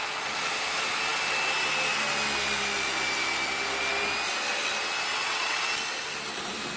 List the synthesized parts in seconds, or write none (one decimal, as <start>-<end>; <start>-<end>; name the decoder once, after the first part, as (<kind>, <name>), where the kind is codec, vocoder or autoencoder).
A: 5.1-5.7 (vocoder, WaveNeXt)